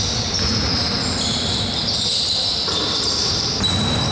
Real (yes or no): yes